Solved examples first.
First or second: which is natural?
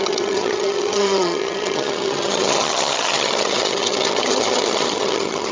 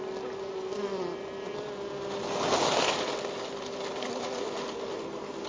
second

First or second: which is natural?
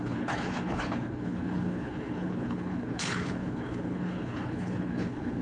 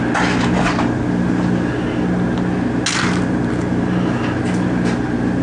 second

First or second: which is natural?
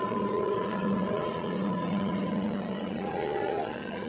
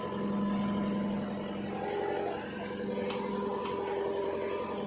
second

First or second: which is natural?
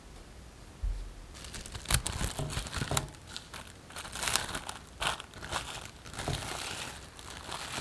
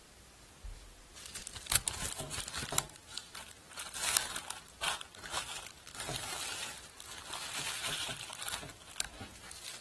first